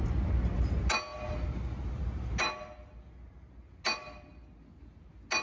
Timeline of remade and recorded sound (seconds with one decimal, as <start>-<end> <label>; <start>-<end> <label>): 0.0-5.4 recorded